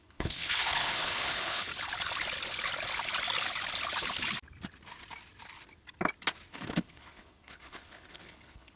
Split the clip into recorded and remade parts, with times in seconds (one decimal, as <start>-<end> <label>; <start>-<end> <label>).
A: 0.0-1.7 remade; 1.7-6.5 recorded; 6.5-8.8 remade